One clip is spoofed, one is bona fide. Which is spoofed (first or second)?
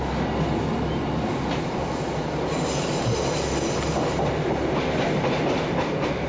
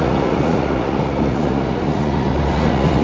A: second